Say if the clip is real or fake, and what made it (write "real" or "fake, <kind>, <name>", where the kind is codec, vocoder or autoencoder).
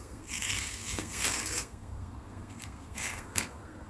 fake, codec, SNAC